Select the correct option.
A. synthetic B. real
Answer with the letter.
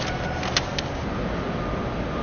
B